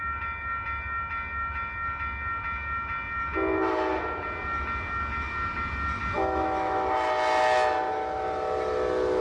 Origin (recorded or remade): recorded